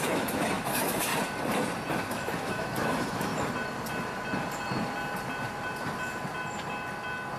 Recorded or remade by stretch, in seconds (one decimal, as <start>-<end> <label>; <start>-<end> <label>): 0.0-1.1 remade; 1.1-2.1 recorded; 2.1-3.3 remade; 3.3-7.4 recorded